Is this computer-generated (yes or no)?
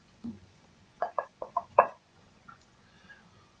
yes